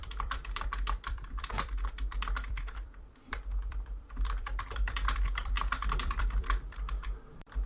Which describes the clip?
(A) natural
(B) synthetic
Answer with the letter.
B